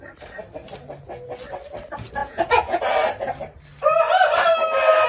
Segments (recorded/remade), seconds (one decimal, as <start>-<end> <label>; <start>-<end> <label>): 0.0-2.2 recorded; 2.2-2.8 remade; 2.8-5.1 recorded